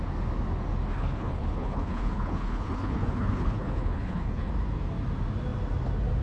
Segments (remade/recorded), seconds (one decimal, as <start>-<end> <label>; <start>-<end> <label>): 0.0-0.8 recorded; 0.8-4.5 remade; 4.5-6.2 recorded